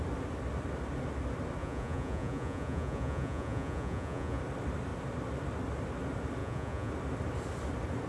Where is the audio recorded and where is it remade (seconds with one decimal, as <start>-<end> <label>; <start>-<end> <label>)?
0.0-1.6 recorded; 1.6-4.4 remade; 4.4-6.4 recorded; 6.4-6.9 remade; 6.9-8.1 recorded